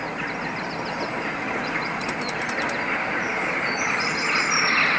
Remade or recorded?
recorded